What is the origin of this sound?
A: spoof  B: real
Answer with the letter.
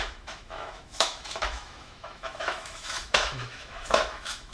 A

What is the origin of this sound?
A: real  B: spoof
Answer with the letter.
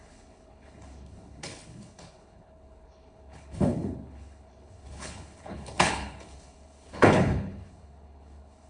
B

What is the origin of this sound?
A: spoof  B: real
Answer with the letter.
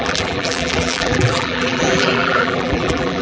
A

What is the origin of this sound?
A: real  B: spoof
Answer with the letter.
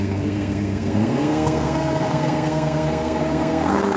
B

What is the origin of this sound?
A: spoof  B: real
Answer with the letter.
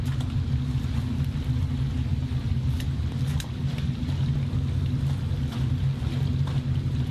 B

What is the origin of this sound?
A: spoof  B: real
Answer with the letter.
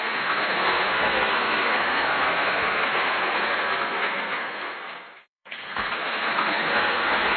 A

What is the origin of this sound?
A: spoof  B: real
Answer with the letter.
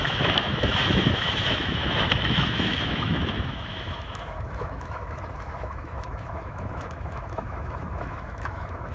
A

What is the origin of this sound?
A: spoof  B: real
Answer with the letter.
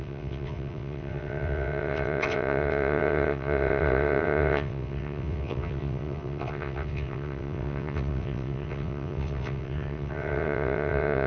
A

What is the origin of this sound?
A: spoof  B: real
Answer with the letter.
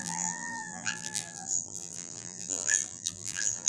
A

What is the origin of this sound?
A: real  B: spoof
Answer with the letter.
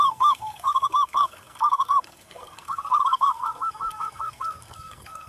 B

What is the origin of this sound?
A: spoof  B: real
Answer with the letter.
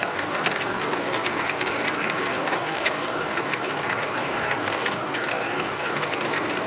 A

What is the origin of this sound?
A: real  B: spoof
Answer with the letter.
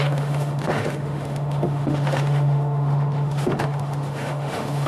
B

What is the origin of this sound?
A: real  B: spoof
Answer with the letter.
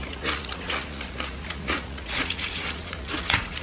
B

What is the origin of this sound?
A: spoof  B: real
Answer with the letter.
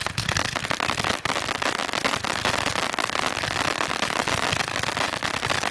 B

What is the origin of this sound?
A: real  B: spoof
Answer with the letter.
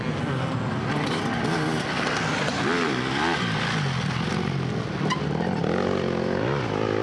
A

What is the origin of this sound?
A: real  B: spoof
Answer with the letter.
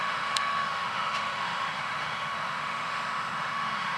B